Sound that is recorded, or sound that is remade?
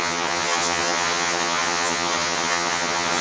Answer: remade